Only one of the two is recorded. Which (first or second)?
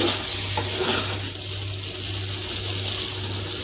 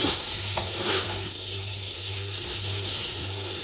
first